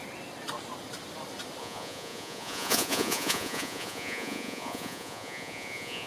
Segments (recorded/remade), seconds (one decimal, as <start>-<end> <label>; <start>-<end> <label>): 0.0-1.6 recorded; 1.6-6.1 remade